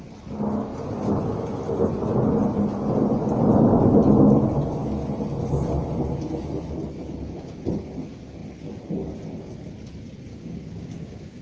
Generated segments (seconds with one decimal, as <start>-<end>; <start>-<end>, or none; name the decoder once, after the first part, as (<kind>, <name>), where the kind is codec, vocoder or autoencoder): 10.3-11.4 (codec, DAC)